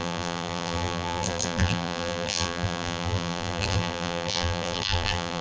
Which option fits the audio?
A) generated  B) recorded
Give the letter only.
A